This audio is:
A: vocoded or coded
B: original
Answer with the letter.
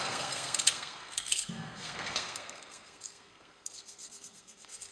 A